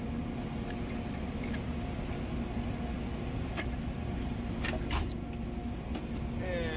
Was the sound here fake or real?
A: real